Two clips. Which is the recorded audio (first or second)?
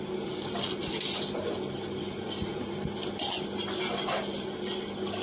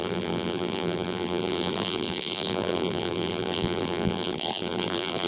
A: first